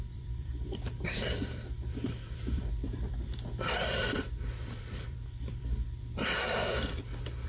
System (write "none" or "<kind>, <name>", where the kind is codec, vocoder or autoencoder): vocoder, BigVGAN v2